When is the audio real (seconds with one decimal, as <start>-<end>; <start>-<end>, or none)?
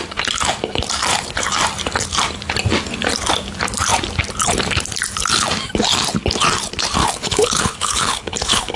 0.0-7.0